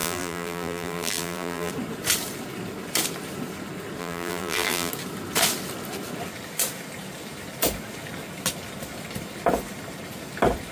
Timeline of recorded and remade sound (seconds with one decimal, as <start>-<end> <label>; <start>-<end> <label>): 0.0-1.7 remade; 1.7-4.0 recorded; 4.0-4.9 remade; 4.9-10.7 recorded